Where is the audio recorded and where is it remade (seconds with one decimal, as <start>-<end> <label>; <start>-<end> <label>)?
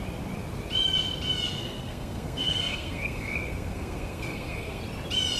0.0-1.6 recorded; 1.6-4.8 remade; 4.8-5.4 recorded